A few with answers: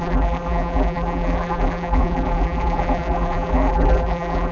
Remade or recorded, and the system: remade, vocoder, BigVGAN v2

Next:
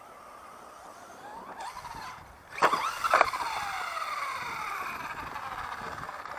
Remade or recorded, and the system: recorded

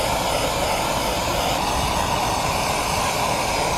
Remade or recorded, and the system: recorded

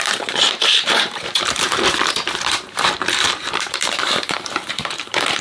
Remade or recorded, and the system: remade, vocoder, BigVGAN v2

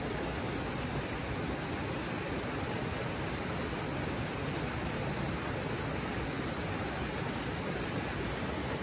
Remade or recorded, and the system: recorded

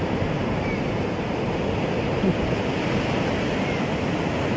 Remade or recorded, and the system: recorded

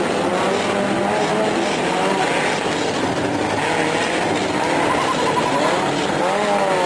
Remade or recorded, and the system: recorded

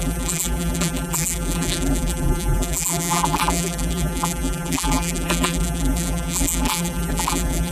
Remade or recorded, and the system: remade, vocoder, BigVGAN v2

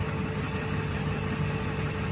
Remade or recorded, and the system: recorded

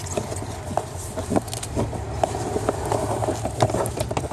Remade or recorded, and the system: recorded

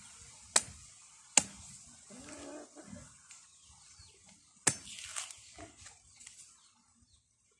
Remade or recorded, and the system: recorded